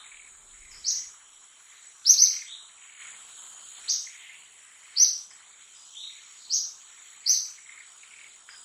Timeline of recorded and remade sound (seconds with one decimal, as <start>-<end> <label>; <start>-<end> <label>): 0.0-1.4 recorded; 1.4-2.6 remade; 2.6-3.0 recorded; 3.0-3.9 remade; 3.9-4.4 recorded; 4.4-8.6 remade